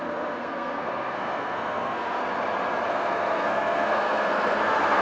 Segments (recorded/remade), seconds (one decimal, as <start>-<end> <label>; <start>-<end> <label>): 0.0-2.2 remade; 2.2-2.9 recorded; 2.9-5.0 remade